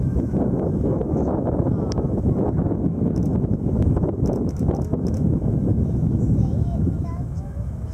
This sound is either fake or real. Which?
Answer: fake